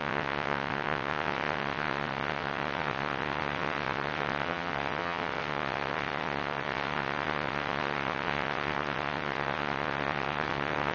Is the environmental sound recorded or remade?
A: remade